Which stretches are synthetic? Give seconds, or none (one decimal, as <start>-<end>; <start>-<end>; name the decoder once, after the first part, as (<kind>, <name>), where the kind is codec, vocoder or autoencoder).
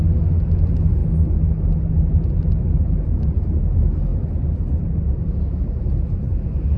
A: none